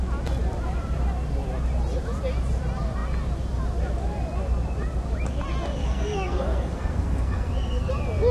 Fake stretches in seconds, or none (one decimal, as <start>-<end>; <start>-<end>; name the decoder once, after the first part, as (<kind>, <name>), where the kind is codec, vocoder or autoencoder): 5.8-7.9 (codec, SNAC)